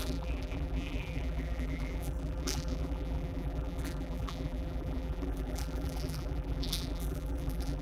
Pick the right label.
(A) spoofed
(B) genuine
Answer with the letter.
A